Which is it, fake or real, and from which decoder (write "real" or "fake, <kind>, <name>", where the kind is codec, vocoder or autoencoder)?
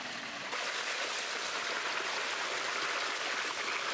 real